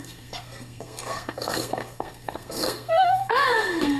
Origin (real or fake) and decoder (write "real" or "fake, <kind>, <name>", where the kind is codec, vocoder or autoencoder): fake, codec, SNAC